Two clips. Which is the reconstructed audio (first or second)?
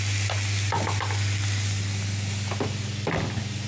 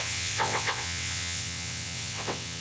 second